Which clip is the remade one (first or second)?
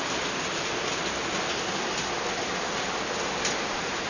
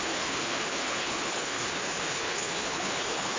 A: second